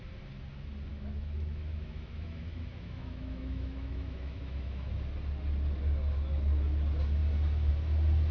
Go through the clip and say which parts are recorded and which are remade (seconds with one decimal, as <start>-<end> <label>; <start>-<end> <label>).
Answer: 0.0-0.9 recorded; 0.9-4.9 remade; 4.9-8.3 recorded